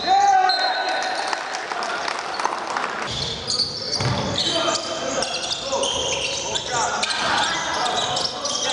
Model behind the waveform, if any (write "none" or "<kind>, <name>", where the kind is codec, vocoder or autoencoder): none